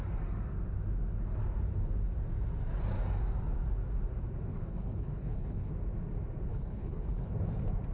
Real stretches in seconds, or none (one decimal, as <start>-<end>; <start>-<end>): 0.0-4.5; 5.7-6.5; 7.3-7.9

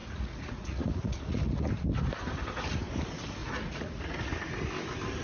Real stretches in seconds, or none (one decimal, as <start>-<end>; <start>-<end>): 1.7-3.4; 4.0-5.2

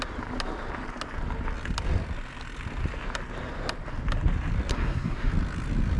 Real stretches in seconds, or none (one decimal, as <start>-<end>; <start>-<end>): 0.0-4.7; 5.3-6.0